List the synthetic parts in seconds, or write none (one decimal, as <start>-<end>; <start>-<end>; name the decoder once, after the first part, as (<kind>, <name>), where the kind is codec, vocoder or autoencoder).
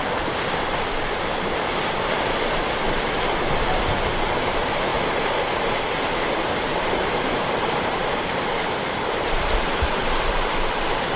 0.0-4.9 (vocoder, BigVGAN v2); 6.5-11.2